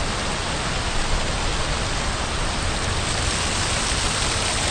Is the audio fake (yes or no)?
no